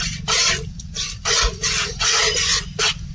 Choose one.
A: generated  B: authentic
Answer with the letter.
B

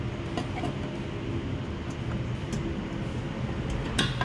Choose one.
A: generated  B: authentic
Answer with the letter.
B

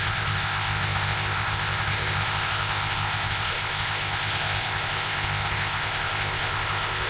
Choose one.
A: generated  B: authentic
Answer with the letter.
A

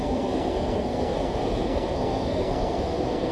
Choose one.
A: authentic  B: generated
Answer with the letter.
B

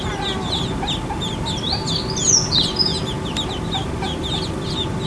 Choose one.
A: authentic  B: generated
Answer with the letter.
A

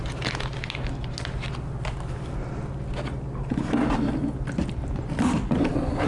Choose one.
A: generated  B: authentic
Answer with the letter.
B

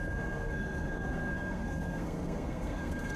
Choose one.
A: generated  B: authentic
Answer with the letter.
A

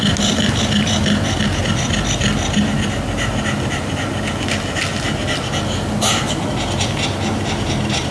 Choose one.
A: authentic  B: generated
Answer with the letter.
A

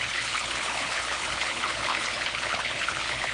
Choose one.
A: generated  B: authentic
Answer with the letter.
A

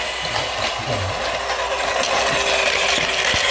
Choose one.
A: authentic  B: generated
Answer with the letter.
A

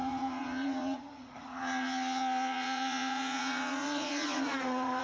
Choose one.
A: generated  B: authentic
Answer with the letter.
A